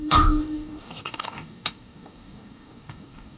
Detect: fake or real fake